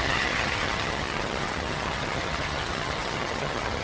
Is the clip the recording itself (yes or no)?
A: no